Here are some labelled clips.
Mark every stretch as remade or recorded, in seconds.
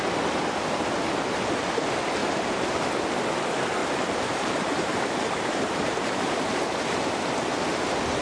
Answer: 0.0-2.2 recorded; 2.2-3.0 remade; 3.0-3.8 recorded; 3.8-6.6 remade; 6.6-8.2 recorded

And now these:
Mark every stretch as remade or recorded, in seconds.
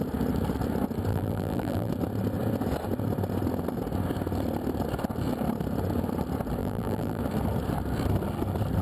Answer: 0.0-1.1 recorded; 1.1-1.9 remade; 1.9-6.6 recorded; 6.6-7.2 remade; 7.2-8.8 recorded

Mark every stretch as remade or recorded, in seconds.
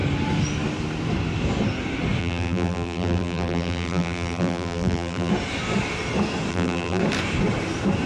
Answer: 0.0-2.2 recorded; 2.2-5.3 remade; 5.3-6.5 recorded; 6.5-7.0 remade; 7.0-8.1 recorded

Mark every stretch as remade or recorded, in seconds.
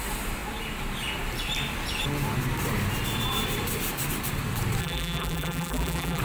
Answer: 0.0-4.8 recorded; 4.8-6.2 remade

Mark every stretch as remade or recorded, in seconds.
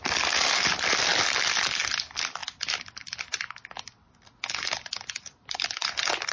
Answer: 0.0-2.4 remade; 2.4-6.3 recorded